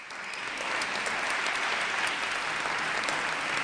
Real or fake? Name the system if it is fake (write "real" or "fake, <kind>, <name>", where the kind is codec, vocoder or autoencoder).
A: real